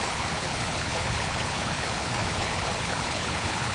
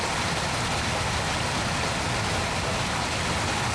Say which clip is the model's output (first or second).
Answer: first